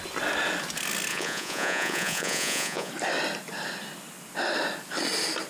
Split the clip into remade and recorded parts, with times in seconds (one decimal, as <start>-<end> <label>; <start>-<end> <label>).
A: 0.0-1.1 recorded; 1.1-2.9 remade; 2.9-5.5 recorded